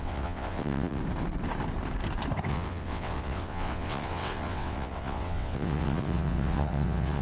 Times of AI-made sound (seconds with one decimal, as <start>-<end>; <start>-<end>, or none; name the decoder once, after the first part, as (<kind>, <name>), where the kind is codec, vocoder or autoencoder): 0.0-1.0 (vocoder, WaveNeXt); 2.5-7.2